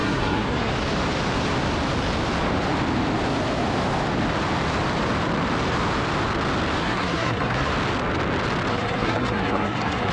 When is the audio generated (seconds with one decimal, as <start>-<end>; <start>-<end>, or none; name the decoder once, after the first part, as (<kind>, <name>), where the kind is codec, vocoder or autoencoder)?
0.0-0.7 (codec, SNAC); 6.8-7.7; 8.7-10.1

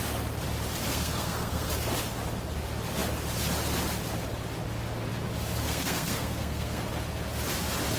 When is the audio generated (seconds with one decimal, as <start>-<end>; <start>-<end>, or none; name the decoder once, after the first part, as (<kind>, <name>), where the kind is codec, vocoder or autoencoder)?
0.9-1.7 (codec, SNAC); 5.6-6.8

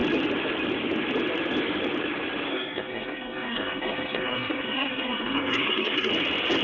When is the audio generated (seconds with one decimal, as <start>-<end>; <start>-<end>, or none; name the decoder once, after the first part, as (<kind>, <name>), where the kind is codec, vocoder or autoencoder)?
2.5-6.1 (codec, SNAC)

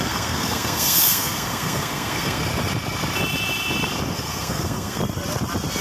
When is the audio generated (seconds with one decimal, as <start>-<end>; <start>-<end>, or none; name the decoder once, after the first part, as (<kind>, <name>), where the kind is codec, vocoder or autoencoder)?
0.0-2.4 (codec, SNAC); 4.1-5.0

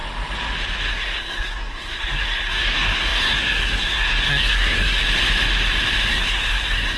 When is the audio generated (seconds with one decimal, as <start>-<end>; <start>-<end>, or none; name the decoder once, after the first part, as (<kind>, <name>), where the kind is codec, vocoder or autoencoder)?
0.9-5.0 (codec, SNAC); 6.1-7.0